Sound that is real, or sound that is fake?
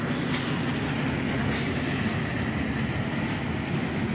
real